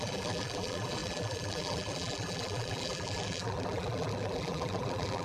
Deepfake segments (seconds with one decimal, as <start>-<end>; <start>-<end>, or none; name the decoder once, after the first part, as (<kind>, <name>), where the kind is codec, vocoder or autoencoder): 0.0-5.2 (vocoder, BigVGAN v2)